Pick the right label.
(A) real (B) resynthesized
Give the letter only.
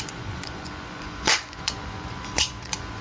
B